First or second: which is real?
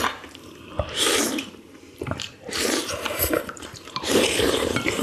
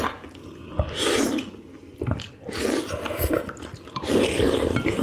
second